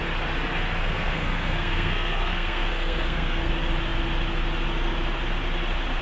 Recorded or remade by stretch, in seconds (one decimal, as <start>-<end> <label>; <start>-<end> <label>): 0.0-0.8 recorded; 0.8-3.5 remade; 3.5-6.0 recorded